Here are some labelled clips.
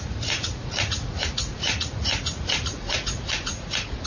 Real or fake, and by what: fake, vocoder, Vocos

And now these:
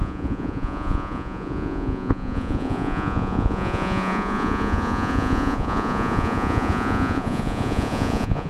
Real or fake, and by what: fake, vocoder, Vocos